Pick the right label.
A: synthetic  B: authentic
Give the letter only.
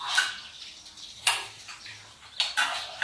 B